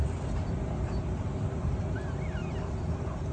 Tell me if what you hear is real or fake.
real